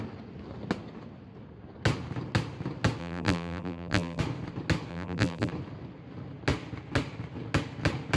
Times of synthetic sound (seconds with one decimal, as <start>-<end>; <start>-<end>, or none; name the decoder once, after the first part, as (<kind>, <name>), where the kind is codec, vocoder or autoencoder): 3.0-4.2 (vocoder, BigVGAN v2); 4.9-5.5